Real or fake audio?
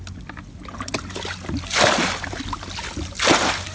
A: real